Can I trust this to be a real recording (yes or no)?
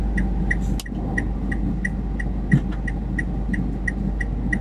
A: yes